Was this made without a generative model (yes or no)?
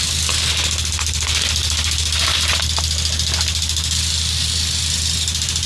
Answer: yes